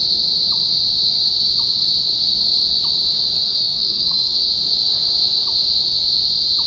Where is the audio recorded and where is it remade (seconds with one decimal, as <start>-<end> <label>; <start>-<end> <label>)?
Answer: 0.0-3.5 recorded; 3.5-4.5 remade; 4.5-6.7 recorded